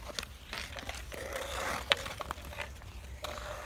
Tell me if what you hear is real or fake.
fake